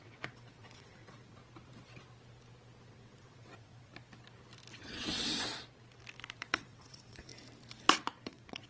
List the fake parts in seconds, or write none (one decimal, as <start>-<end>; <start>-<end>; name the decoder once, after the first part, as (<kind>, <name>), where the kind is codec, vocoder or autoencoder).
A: 0.0-1.4 (vocoder, WaveNeXt); 2.9-3.9; 4.7-5.5; 6.4-7.3; 8.2-8.7